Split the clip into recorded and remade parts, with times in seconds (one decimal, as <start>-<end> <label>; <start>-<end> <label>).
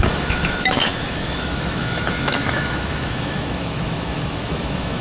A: 0.0-5.0 remade